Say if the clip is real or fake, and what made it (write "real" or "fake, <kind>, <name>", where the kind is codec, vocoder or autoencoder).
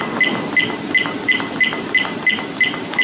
real